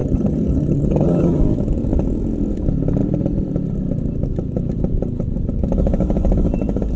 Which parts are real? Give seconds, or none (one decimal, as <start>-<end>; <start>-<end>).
1.4-7.0